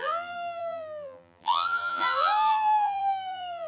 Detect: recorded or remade remade